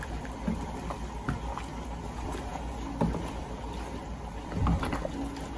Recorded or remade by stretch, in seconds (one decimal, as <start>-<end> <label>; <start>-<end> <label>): 0.0-5.6 recorded